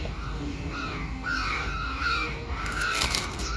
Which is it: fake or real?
fake